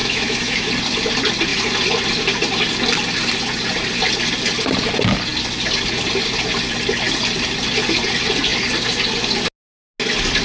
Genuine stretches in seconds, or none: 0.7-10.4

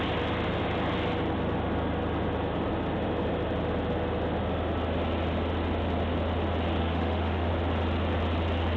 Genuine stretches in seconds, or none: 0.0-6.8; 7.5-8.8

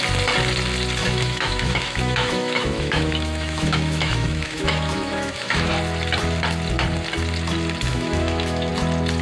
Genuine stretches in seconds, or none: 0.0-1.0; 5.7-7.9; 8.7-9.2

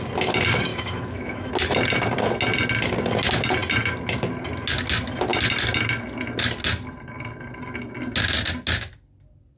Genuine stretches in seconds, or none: 0.0-0.7; 1.5-9.6

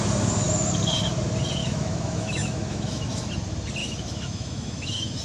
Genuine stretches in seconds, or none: 0.0-1.6; 3.3-3.8